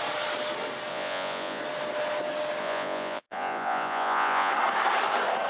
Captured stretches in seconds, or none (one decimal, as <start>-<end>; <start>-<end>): 0.0-0.9; 1.6-2.6; 4.5-5.5